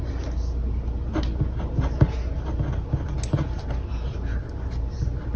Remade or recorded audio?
recorded